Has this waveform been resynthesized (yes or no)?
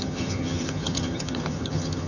yes